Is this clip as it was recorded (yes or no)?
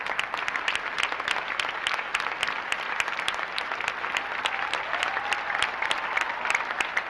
yes